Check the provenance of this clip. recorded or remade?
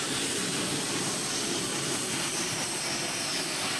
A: remade